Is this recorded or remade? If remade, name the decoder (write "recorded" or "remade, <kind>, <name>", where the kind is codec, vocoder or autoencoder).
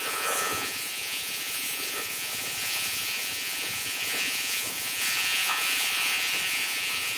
remade, vocoder, Vocos